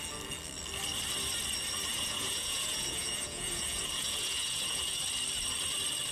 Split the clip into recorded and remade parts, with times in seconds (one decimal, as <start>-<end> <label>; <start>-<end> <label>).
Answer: 0.0-1.9 recorded; 1.9-5.0 remade; 5.0-6.1 recorded